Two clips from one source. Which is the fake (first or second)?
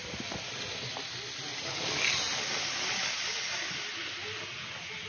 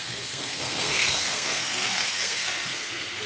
second